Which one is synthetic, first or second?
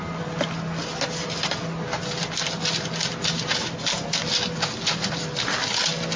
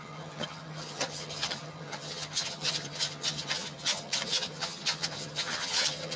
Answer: second